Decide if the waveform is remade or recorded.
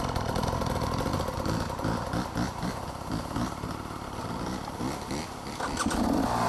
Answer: recorded